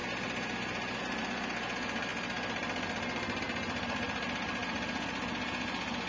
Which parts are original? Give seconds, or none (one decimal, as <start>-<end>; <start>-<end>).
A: 0.0-6.1